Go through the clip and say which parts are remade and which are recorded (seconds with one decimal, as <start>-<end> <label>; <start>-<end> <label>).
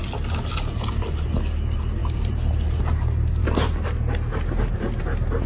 0.0-5.5 recorded